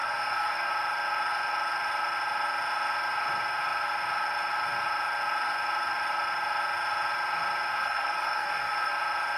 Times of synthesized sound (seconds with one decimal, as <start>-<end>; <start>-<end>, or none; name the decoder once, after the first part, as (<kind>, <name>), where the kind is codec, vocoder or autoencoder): 0.0-0.7 (codec, SNAC); 7.8-8.9